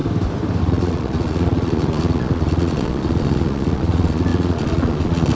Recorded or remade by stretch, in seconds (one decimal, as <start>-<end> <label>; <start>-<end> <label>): 0.0-0.6 recorded; 0.6-5.3 remade